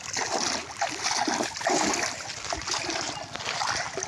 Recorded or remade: recorded